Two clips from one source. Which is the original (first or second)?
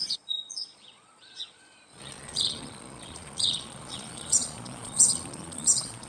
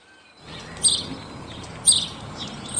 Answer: second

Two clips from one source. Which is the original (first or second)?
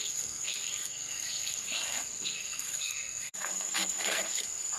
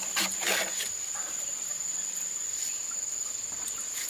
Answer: second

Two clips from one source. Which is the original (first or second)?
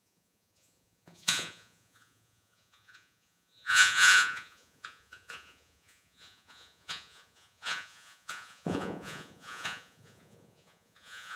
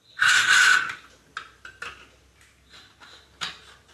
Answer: second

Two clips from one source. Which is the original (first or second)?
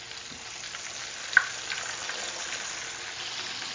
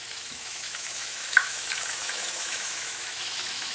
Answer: first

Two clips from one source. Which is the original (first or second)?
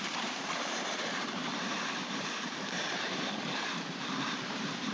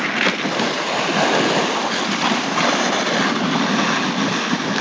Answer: second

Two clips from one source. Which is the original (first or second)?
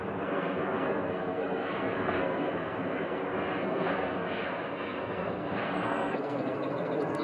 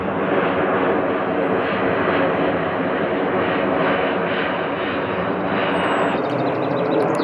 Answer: second